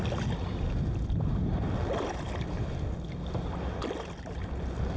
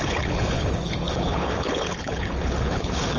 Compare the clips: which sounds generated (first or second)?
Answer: second